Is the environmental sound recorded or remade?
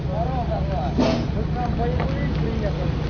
recorded